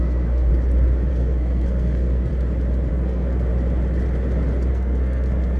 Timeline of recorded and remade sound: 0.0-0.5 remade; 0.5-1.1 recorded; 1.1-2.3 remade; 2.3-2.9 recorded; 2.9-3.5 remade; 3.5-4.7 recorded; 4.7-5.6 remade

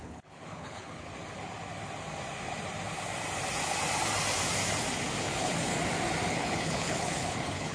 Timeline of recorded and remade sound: 0.0-1.1 remade; 1.1-5.2 recorded; 5.2-5.7 remade; 5.7-6.3 recorded; 6.3-7.7 remade

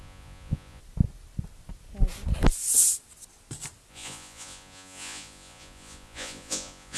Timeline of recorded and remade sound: 0.0-0.8 remade; 0.8-3.9 recorded; 3.9-7.0 remade

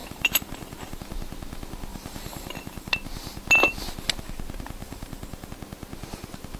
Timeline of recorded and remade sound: 0.0-1.0 remade; 1.0-1.9 recorded; 1.9-2.9 remade; 2.9-4.8 recorded; 4.8-5.5 remade; 5.5-6.6 recorded

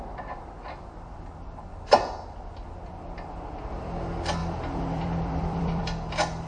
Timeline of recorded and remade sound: 0.0-4.4 recorded; 4.4-5.8 remade; 5.8-6.5 recorded

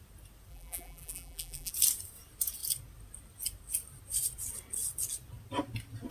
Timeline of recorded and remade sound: 0.0-0.5 recorded; 0.5-1.7 remade; 1.7-6.1 recorded

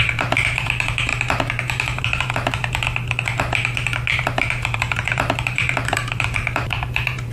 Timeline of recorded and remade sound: 0.0-2.6 remade; 2.6-4.1 recorded; 4.1-7.3 remade

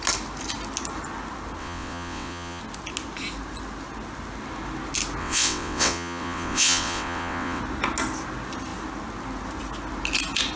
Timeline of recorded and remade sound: 0.0-1.6 recorded; 1.6-2.6 remade; 2.6-5.2 recorded; 5.2-7.6 remade; 7.6-10.6 recorded